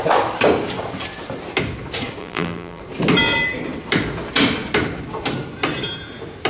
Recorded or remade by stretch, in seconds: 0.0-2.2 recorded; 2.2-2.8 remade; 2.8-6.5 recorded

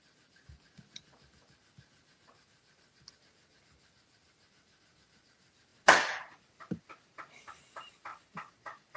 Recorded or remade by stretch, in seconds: 0.0-9.0 recorded

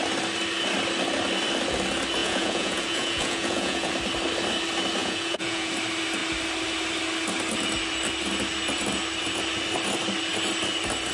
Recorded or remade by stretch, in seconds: 0.0-2.2 recorded; 2.2-3.9 remade; 3.9-5.0 recorded; 5.0-5.7 remade; 5.7-11.1 recorded